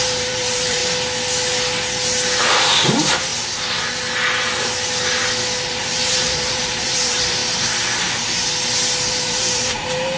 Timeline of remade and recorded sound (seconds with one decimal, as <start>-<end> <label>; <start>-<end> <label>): 0.0-0.8 remade; 0.8-2.4 recorded; 2.4-3.3 remade; 3.3-5.7 recorded; 5.7-7.4 remade; 7.4-9.1 recorded; 9.1-10.2 remade